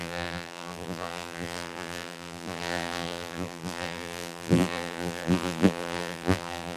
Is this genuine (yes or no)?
no